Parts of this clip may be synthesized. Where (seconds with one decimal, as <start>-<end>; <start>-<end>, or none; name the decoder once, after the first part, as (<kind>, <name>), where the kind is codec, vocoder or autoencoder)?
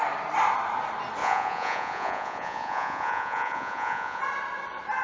1.2-4.2 (vocoder, Vocos)